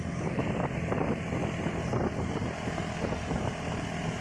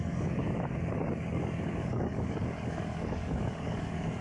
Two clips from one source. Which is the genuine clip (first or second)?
first